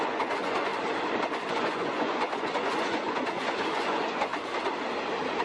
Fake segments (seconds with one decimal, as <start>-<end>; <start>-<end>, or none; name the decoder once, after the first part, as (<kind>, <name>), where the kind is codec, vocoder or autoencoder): 0.0-0.7 (vocoder, Vocos); 1.5-4.3